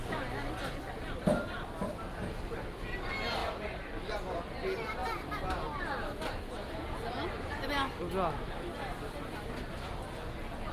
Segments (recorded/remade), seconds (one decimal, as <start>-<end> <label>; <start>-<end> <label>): 0.0-10.7 recorded